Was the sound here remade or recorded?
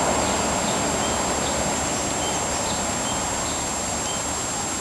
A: recorded